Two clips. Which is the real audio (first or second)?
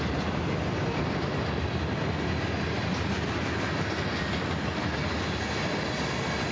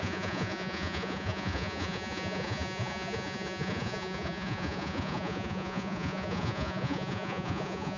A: first